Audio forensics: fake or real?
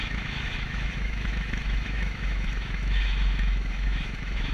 fake